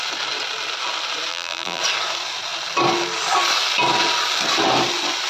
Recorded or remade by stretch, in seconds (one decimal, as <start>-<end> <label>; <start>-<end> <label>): 0.0-1.3 recorded; 1.3-1.8 remade; 1.8-5.3 recorded